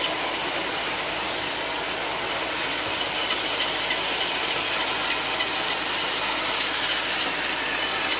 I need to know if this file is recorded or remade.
recorded